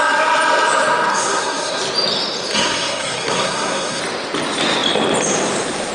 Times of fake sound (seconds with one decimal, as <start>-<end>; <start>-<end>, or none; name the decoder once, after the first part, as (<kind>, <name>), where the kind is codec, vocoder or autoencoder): 1.1-1.8 (codec, SNAC); 2.5-4.0

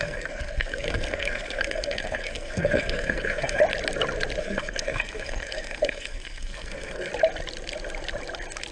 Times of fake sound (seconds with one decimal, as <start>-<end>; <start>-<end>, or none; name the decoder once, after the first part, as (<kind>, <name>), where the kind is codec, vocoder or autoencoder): 0.0-3.6 (codec, SNAC); 4.4-7.1

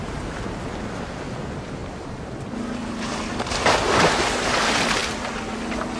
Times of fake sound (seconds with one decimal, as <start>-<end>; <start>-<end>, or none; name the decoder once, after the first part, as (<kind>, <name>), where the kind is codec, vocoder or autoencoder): none

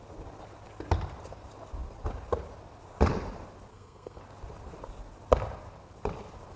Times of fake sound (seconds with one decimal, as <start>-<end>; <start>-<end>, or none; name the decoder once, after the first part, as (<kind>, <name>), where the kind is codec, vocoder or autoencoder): 3.7-4.2 (codec, SNAC)